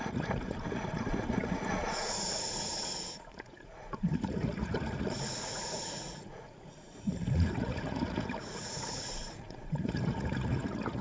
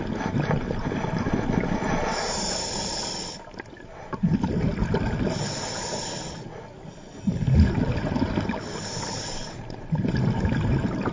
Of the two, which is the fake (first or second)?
first